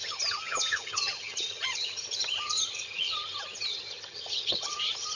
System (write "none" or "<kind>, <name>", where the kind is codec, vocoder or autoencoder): vocoder, HiFi-GAN